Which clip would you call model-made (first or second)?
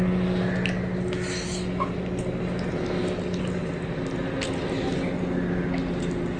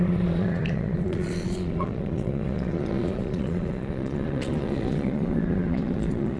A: second